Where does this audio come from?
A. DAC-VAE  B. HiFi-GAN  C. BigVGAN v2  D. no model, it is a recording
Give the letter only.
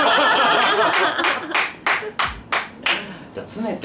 D